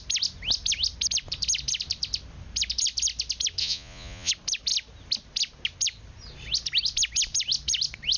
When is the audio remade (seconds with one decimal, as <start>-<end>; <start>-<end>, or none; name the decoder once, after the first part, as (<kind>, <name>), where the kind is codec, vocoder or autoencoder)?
3.6-4.3 (vocoder, Vocos)